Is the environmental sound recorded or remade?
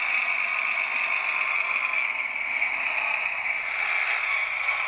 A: recorded